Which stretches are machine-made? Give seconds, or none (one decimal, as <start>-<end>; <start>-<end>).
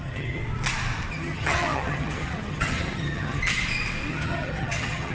0.0-0.4; 1.1-3.4; 4.1-5.1